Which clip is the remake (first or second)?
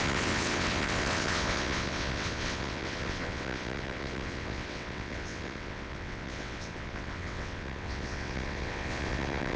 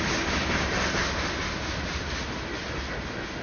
first